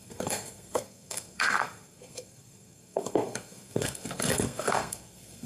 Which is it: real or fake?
fake